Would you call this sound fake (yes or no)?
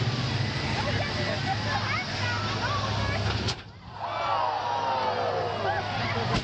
no